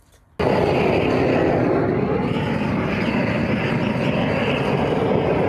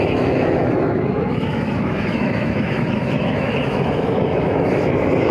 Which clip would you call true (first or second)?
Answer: first